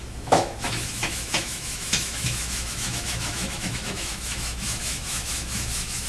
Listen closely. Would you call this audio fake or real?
fake